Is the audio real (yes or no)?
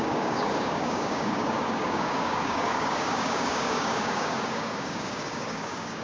no